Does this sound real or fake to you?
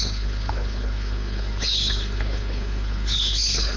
fake